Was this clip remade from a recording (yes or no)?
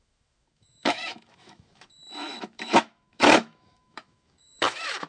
yes